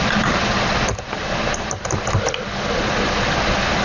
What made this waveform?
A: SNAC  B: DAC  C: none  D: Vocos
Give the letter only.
C